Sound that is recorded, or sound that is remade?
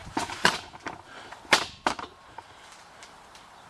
remade